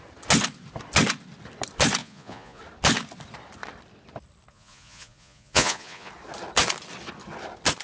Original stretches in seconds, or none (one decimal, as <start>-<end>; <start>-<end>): 0.0-2.0; 2.6-4.5; 6.1-7.8